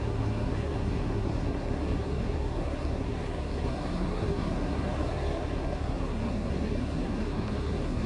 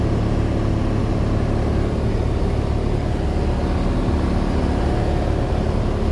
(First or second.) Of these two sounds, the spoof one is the first